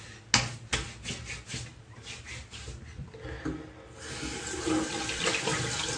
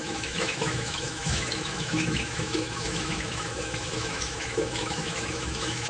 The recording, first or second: first